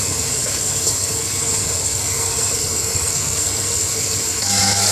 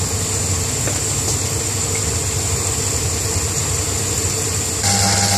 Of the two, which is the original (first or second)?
second